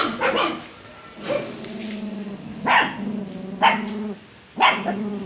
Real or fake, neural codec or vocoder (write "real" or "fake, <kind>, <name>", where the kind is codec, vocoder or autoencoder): real